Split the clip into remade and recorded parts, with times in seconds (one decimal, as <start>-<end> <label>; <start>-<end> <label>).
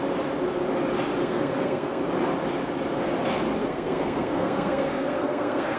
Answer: 0.0-1.2 recorded; 1.2-2.0 remade; 2.0-3.6 recorded; 3.6-5.8 remade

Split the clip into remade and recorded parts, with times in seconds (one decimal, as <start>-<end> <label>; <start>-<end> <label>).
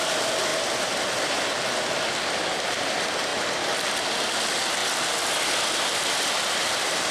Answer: 0.0-7.1 recorded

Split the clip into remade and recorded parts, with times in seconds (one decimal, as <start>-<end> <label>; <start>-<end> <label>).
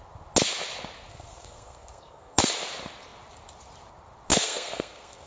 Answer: 0.0-1.1 recorded; 1.1-2.5 remade; 2.5-4.3 recorded; 4.3-5.3 remade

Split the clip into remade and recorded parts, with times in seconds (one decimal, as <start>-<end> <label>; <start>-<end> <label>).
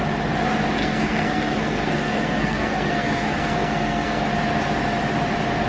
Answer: 0.0-0.8 recorded; 0.8-4.2 remade; 4.2-5.7 recorded